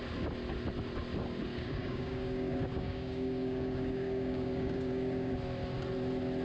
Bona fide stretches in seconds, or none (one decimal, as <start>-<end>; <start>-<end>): 0.0-1.5; 5.3-6.4